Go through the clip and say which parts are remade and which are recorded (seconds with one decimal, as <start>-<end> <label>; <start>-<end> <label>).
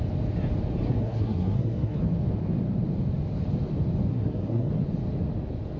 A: 0.0-0.8 recorded; 0.8-2.0 remade; 2.0-4.1 recorded; 4.1-4.7 remade; 4.7-5.8 recorded